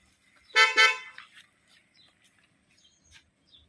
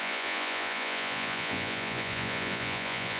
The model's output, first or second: second